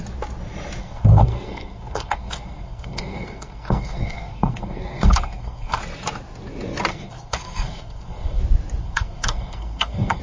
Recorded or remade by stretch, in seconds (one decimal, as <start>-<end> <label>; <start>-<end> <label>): 0.0-0.8 recorded; 0.8-5.8 remade; 5.8-6.9 recorded; 6.9-8.4 remade; 8.4-8.8 recorded; 8.8-10.2 remade